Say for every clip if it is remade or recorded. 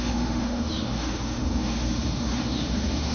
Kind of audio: remade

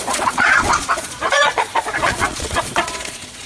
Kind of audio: remade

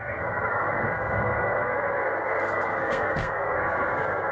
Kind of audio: remade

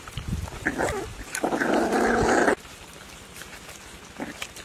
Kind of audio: recorded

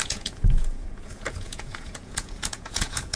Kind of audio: remade